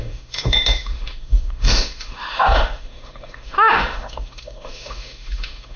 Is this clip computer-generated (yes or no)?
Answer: yes